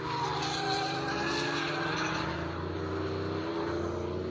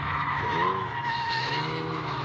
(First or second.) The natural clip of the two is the first